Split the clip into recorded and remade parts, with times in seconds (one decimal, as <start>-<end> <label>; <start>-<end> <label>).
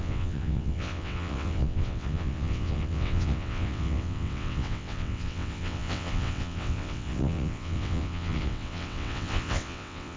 0.0-10.2 remade